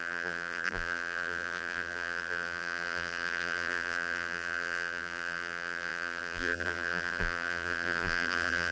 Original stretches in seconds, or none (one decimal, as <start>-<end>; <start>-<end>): none